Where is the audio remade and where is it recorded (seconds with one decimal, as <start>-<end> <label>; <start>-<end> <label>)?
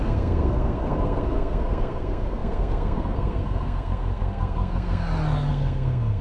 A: 0.0-5.0 remade; 5.0-5.5 recorded; 5.5-6.2 remade